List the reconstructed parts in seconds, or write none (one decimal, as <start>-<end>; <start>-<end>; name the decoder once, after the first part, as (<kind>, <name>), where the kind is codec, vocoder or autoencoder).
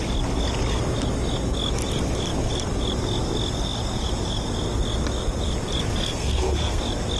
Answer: 6.0-6.8 (codec, SNAC)